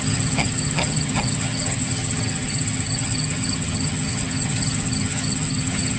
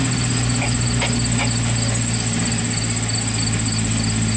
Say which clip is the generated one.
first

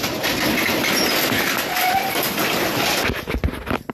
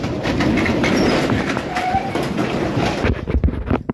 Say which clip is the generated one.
second